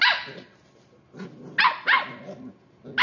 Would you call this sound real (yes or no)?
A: yes